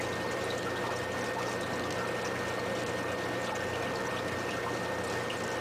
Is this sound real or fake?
real